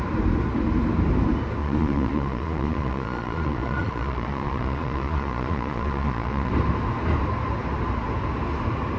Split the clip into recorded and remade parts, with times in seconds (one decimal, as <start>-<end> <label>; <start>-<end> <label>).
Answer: 0.0-1.6 recorded; 1.6-6.5 remade; 6.5-9.0 recorded